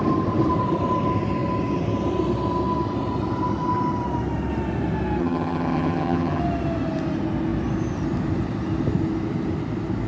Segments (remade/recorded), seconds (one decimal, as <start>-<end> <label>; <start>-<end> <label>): 0.0-5.2 recorded; 5.2-6.4 remade; 6.4-10.1 recorded